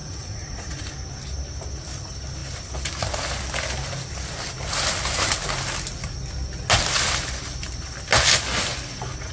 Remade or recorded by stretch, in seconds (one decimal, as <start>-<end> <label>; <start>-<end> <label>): 0.0-0.8 remade; 0.8-9.3 recorded